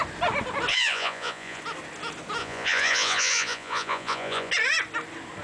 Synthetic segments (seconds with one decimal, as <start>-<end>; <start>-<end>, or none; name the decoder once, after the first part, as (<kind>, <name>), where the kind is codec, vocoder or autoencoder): 0.7-1.6 (vocoder, Vocos); 2.4-4.5